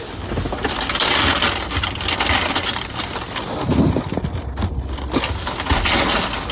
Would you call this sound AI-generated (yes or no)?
no